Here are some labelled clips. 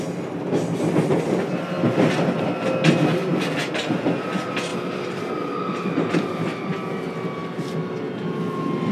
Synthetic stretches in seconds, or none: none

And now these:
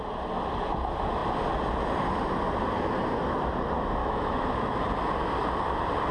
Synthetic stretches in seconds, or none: 4.0-4.8 (autoencoder, DAC-VAE)

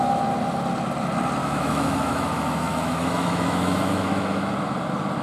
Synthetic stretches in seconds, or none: 1.4-4.5 (autoencoder, DAC-VAE)

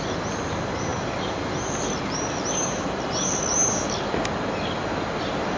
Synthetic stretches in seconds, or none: none

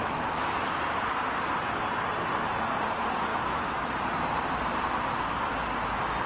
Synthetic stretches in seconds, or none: 0.0-0.7 (autoencoder, DAC-VAE); 3.3-3.9

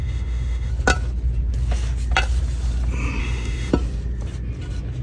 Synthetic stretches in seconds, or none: 0.0-0.7 (autoencoder, DAC-VAE); 3.2-3.7

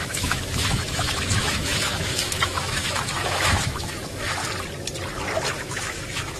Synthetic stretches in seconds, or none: 0.0-4.4 (autoencoder, DAC-VAE); 5.5-6.4

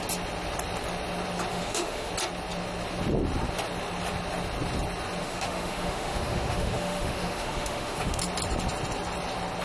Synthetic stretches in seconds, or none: 1.5-2.1 (autoencoder, DAC-VAE); 5.2-8.2